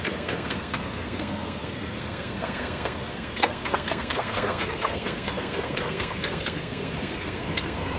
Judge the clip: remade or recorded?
remade